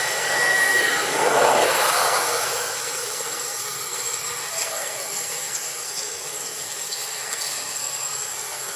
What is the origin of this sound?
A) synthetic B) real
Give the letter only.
A